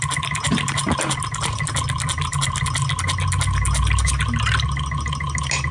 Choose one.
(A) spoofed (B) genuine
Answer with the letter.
B